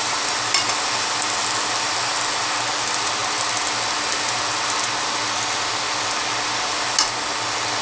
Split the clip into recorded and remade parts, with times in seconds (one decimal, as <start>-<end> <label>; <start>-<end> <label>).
0.0-7.8 recorded